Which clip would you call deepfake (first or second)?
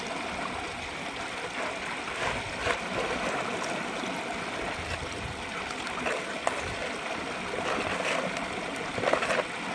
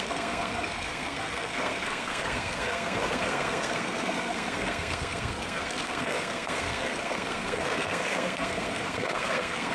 second